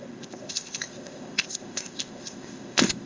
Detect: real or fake fake